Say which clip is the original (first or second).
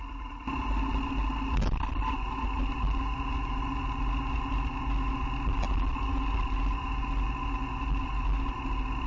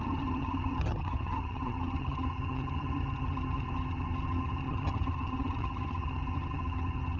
first